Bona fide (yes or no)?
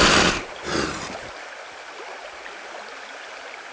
yes